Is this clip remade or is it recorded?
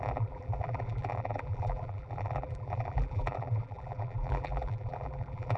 remade